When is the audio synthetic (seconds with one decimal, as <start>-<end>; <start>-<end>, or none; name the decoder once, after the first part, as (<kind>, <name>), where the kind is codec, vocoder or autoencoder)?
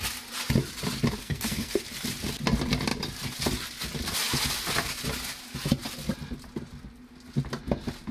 1.2-1.8 (codec, SNAC)